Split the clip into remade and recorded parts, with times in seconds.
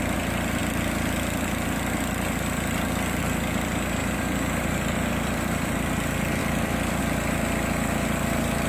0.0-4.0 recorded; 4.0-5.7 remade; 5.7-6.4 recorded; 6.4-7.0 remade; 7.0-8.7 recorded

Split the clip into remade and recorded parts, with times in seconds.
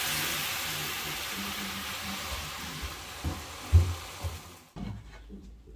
0.0-0.5 recorded; 0.5-2.8 remade; 2.8-5.8 recorded